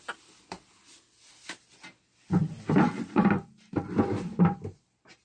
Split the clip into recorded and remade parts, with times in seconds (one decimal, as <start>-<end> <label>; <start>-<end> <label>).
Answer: 0.0-2.4 recorded; 2.4-5.2 remade